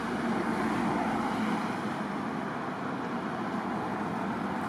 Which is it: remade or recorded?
recorded